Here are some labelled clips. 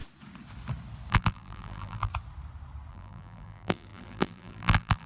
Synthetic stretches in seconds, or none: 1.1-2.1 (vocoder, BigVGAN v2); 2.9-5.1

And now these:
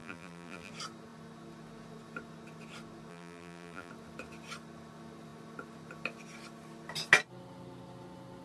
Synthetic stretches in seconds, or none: 0.0-0.7 (vocoder, BigVGAN v2); 3.1-3.9

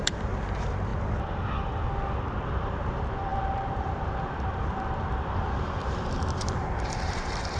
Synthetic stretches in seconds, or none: 0.0-0.9 (vocoder, BigVGAN v2); 2.4-7.6

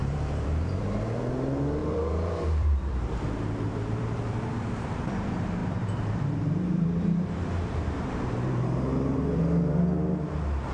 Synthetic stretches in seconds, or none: 0.0-0.8 (vocoder, BigVGAN v2); 1.8-5.1; 5.6-9.4

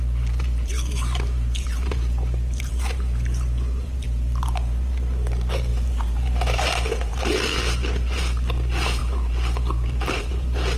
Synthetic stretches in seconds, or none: 0.0-10.8 (vocoder, BigVGAN v2)

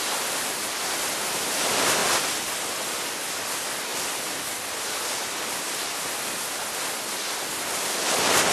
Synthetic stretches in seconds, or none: none

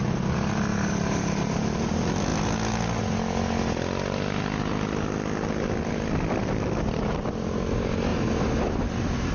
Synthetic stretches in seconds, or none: 0.7-1.6 (vocoder, BigVGAN v2)

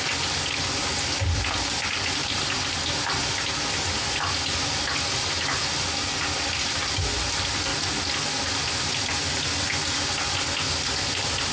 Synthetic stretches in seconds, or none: 2.2-3.3 (vocoder, BigVGAN v2)